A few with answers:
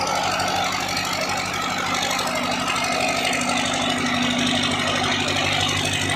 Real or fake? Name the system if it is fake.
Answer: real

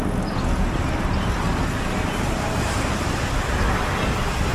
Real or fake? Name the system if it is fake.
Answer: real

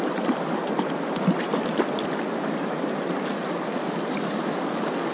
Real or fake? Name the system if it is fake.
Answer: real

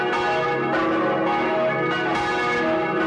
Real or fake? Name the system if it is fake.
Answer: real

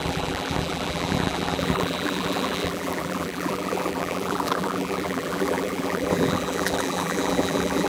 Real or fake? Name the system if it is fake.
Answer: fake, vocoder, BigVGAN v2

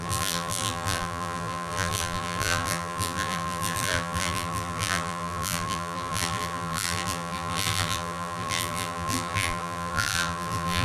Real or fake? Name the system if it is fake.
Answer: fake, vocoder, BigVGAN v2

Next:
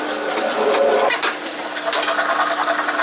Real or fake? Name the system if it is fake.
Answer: real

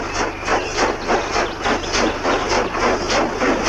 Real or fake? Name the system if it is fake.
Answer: real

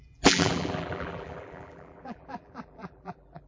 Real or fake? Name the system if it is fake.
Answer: fake, vocoder, BigVGAN v2